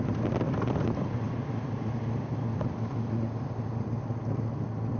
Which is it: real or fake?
real